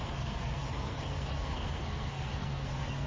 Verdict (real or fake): fake